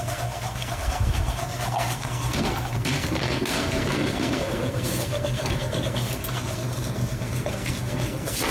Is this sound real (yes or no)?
no